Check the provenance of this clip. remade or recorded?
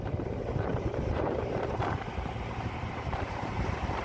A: remade